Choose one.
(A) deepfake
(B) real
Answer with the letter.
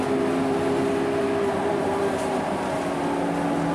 B